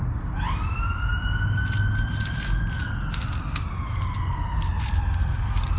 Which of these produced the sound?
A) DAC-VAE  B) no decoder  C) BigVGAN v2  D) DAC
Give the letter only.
B